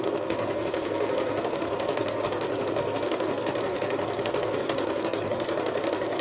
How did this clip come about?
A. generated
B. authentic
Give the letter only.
A